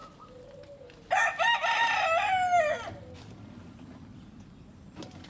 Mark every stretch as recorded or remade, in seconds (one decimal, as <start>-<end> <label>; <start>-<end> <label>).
0.0-5.3 recorded

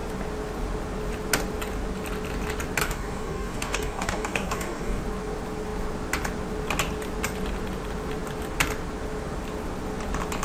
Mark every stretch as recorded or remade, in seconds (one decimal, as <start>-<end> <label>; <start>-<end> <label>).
0.0-2.8 recorded; 2.8-5.0 remade; 5.0-10.4 recorded

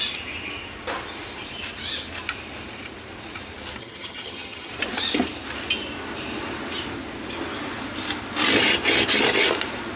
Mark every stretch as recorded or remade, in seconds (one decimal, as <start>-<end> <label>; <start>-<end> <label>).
0.0-3.8 recorded; 3.8-4.7 remade; 4.7-10.0 recorded

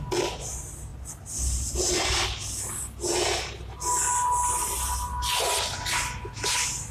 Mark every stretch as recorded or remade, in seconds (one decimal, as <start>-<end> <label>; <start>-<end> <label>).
0.0-6.9 recorded

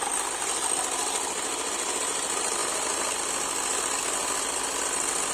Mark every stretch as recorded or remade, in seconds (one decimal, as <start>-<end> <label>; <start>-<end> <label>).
0.0-5.3 recorded

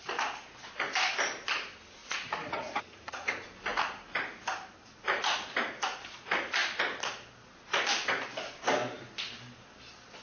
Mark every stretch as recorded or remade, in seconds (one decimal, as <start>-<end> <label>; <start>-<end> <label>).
0.0-2.0 recorded; 2.0-3.3 remade; 3.3-10.2 recorded

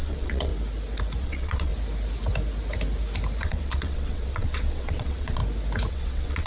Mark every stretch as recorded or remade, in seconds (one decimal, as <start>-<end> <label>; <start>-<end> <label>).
0.0-0.5 remade; 0.5-1.2 recorded; 1.2-1.7 remade; 1.7-3.4 recorded; 3.4-5.4 remade; 5.4-5.9 recorded; 5.9-6.5 remade

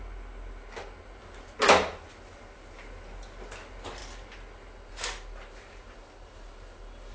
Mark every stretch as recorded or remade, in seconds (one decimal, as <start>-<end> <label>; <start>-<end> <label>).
0.0-7.1 recorded